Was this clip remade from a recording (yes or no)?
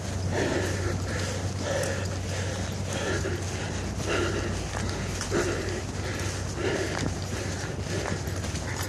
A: no